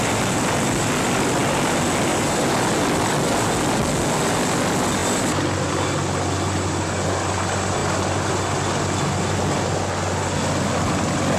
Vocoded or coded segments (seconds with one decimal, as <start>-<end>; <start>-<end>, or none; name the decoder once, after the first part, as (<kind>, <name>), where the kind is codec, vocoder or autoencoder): none